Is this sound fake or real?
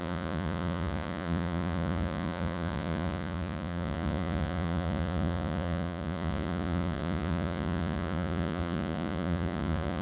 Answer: fake